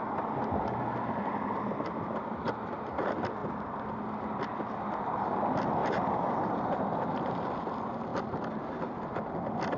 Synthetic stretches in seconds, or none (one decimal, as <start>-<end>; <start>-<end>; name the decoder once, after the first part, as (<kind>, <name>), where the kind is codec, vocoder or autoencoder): 3.4-4.0 (vocoder, BigVGAN v2); 5.8-6.6